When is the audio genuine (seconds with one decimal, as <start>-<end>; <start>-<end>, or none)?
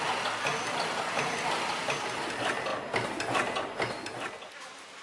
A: 0.0-5.0